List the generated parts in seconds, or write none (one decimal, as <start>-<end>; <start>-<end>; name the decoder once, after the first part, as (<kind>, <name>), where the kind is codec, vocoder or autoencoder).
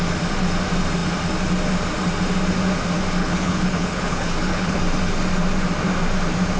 3.2-4.8 (codec, HILCodec)